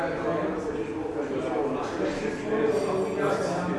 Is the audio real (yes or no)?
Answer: yes